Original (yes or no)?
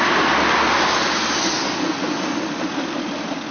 yes